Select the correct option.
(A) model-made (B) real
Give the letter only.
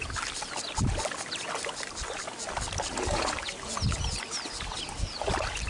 B